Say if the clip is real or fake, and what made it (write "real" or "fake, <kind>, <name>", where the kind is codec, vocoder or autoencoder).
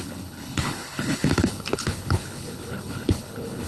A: fake, codec, HILCodec